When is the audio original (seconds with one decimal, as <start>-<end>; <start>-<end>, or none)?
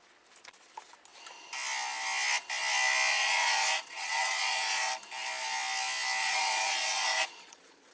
0.0-3.1; 4.9-6.2